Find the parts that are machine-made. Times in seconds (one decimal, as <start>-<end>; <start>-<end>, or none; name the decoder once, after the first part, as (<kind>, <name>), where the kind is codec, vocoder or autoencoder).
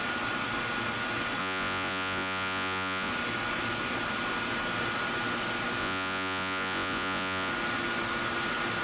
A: 1.4-3.1 (vocoder, Vocos); 5.8-7.5